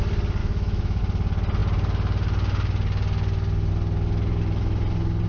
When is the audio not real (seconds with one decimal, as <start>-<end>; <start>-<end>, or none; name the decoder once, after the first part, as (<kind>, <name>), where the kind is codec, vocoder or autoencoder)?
0.4-1.0 (autoencoder, DAC-VAE)